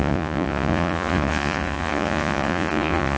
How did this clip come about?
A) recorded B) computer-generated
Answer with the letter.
B